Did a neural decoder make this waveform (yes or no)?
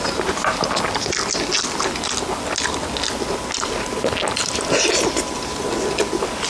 no